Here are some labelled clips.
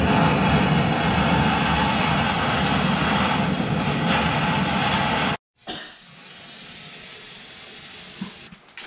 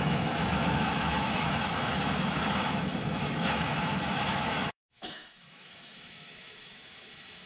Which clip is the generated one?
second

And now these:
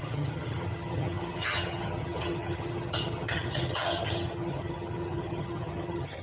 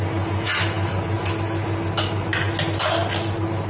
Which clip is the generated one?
first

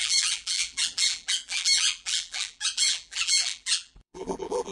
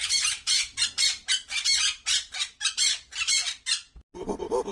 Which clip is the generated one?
first